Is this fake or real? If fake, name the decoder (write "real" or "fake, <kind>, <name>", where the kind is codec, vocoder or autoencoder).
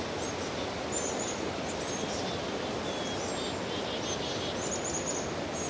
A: real